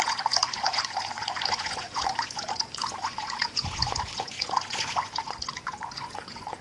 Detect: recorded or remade remade